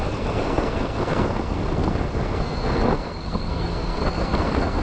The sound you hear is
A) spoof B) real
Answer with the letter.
A